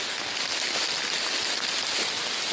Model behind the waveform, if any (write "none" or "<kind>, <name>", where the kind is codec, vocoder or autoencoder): none